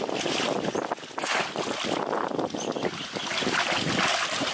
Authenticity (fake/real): real